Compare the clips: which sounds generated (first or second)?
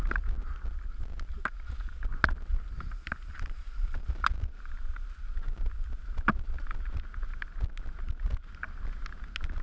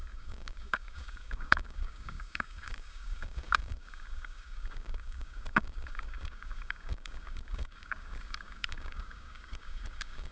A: second